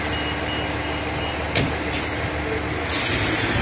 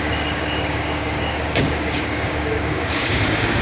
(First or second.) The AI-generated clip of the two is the second